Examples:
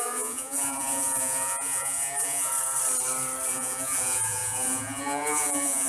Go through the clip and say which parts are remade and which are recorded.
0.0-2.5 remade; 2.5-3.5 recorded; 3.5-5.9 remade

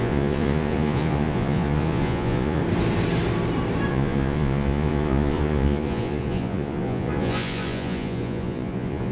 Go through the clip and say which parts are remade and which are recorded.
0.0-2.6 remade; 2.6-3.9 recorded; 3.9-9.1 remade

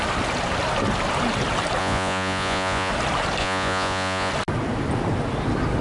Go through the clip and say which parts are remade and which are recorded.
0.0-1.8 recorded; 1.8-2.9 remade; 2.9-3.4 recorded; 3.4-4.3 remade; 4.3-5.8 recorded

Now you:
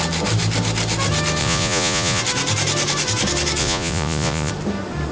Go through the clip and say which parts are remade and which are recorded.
0.0-1.4 recorded; 1.4-2.2 remade; 2.2-3.6 recorded; 3.6-4.5 remade; 4.5-5.1 recorded

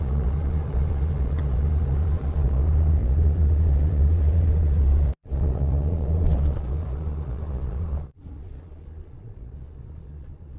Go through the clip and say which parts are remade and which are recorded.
0.0-10.6 remade